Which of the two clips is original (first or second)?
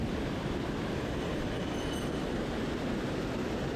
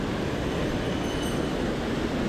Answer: second